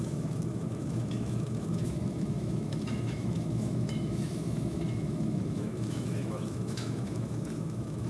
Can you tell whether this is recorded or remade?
remade